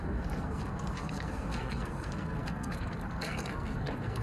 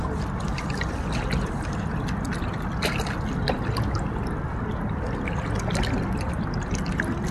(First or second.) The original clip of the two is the second